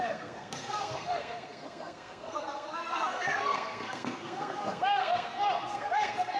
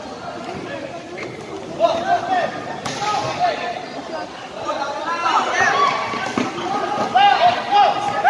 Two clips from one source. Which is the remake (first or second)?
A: first